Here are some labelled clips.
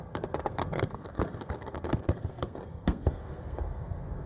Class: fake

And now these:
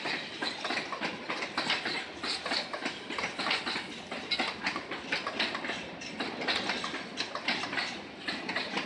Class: real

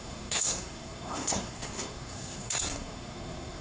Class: fake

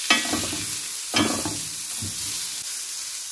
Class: real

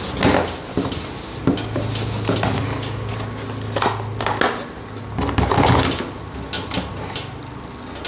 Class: real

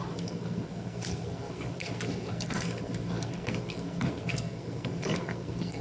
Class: fake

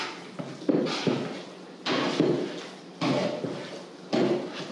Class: real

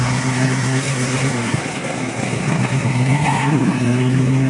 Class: fake